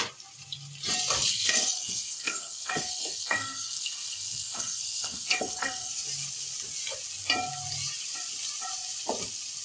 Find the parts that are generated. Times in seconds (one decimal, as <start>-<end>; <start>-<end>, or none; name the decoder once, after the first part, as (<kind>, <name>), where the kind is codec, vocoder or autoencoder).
1.3-5.9 (codec, SNAC)